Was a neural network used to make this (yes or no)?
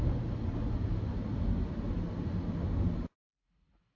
no